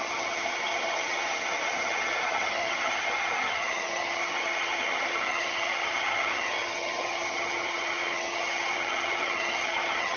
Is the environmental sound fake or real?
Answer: fake